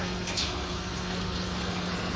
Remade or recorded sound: remade